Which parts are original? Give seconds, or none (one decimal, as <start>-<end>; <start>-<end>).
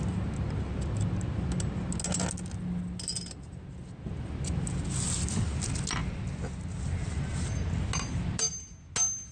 0.0-9.3